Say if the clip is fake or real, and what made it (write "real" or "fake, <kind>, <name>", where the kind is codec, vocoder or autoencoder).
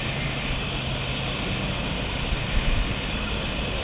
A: real